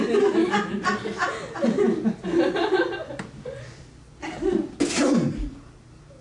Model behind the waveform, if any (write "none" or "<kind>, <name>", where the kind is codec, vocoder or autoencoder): none